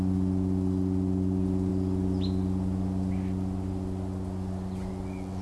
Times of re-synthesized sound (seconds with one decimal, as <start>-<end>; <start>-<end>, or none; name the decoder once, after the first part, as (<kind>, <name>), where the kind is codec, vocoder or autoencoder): none